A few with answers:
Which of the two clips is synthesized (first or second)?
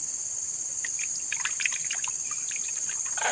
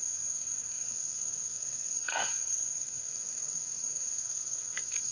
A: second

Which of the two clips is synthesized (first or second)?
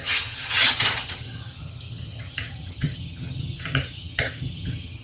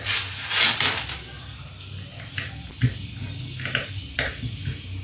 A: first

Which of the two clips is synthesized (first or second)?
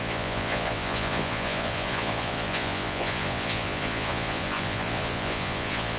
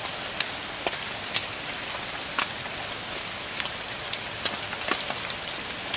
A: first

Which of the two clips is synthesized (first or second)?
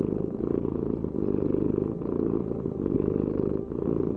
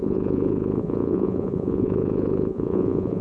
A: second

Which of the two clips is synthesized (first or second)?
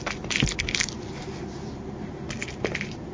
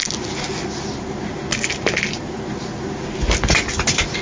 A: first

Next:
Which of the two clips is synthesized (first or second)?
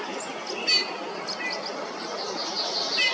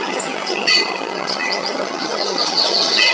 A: second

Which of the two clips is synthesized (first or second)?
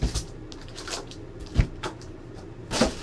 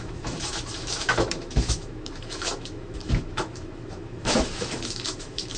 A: second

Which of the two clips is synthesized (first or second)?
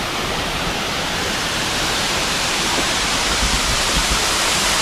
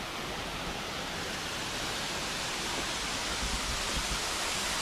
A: first